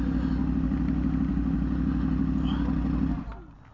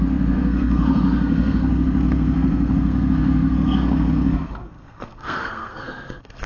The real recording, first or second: first